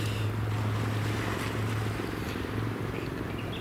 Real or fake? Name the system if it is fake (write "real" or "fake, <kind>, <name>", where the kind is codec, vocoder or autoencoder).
real